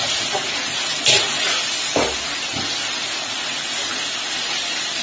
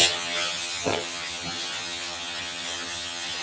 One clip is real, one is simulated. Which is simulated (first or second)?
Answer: second